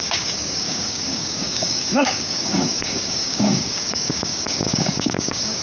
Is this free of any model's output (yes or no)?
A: no